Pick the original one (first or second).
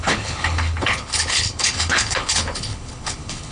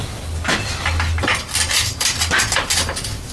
second